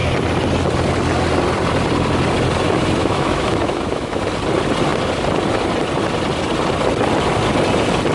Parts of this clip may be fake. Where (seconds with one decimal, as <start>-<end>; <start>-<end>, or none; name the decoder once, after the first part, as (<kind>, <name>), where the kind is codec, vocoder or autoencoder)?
3.0-4.2 (autoencoder, DAC-VAE)